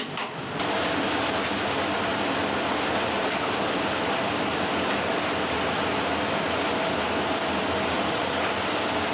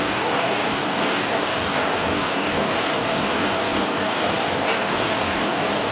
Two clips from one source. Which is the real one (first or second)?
first